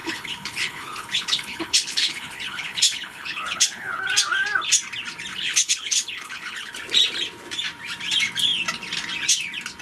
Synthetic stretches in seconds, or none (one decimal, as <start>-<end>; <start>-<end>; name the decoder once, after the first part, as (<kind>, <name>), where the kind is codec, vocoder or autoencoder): 0.0-4.0 (codec, HILCodec); 5.3-6.7